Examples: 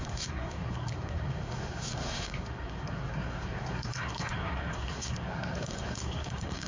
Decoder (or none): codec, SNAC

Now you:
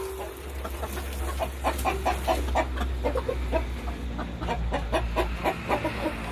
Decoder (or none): none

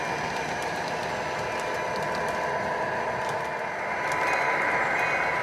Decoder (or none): none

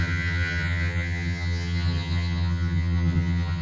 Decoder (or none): vocoder, HiFi-GAN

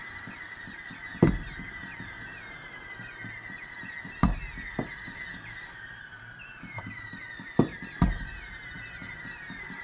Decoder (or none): none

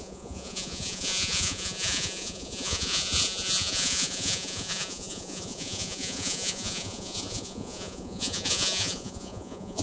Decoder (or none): vocoder, Vocos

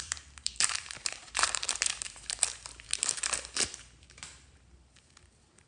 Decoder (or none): vocoder, BigVGAN v2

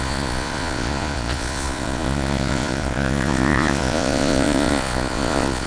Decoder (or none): vocoder, Vocos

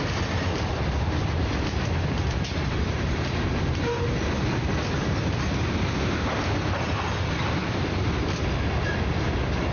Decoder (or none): none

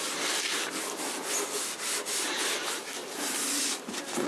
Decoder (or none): none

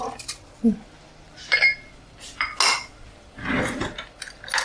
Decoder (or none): none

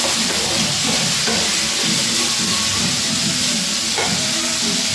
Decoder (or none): none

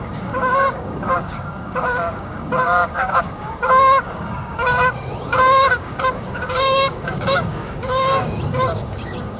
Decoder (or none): codec, DAC